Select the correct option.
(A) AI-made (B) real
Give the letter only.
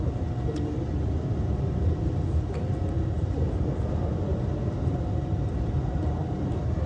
B